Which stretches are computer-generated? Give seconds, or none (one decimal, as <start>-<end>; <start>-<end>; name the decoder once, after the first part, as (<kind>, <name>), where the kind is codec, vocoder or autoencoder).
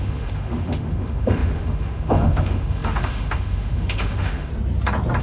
0.0-4.5 (autoencoder, DAC-VAE)